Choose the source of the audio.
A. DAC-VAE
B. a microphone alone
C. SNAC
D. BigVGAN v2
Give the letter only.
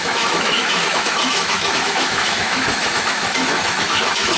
A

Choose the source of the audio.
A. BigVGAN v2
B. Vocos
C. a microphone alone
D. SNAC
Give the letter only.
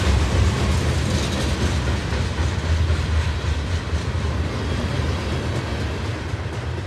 C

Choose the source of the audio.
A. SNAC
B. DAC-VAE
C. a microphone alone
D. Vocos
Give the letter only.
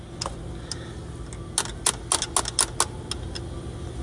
C